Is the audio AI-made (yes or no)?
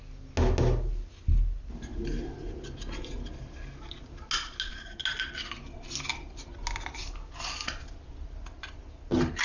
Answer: no